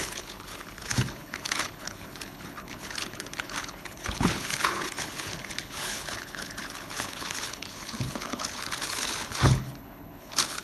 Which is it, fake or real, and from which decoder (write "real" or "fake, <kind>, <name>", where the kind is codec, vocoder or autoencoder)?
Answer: fake, codec, HILCodec